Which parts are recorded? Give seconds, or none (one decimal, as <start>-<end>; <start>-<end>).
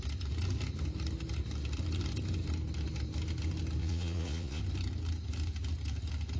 0.0-3.8; 4.6-6.4